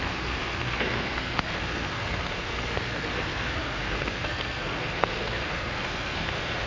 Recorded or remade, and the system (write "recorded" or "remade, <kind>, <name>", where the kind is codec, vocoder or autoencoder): remade, codec, SNAC